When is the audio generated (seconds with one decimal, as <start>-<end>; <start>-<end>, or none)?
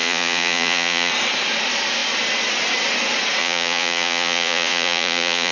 0.0-1.1; 3.4-5.5